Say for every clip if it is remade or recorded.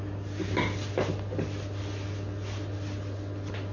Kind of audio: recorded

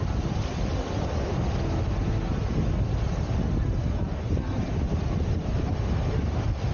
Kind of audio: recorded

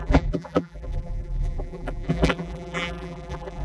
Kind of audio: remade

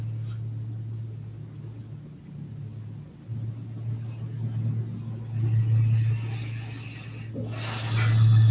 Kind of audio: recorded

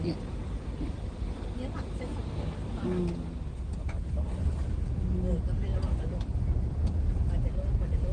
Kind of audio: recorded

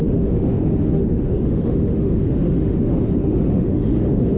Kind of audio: remade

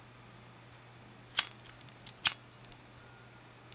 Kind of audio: recorded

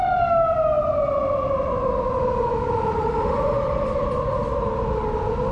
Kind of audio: recorded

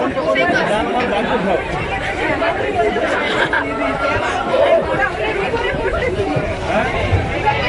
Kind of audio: remade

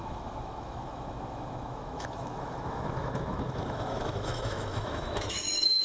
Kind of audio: remade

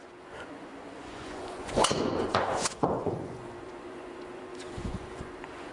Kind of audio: remade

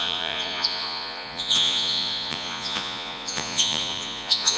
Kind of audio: remade